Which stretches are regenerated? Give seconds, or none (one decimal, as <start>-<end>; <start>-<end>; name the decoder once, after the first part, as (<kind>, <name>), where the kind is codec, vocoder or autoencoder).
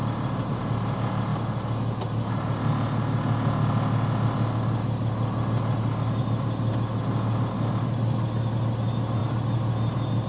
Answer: none